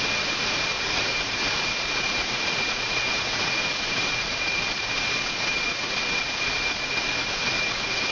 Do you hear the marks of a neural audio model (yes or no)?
yes